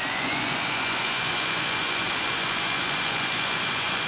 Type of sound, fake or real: fake